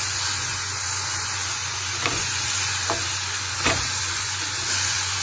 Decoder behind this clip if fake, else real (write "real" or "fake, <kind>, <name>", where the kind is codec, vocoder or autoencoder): fake, vocoder, Vocos